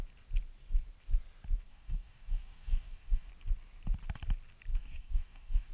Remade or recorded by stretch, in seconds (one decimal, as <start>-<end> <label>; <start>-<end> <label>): 0.0-1.7 recorded; 1.7-3.3 remade; 3.3-4.7 recorded; 4.7-5.7 remade